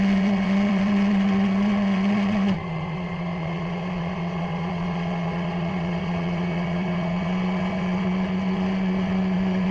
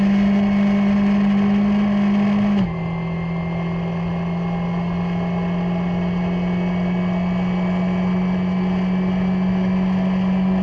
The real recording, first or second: second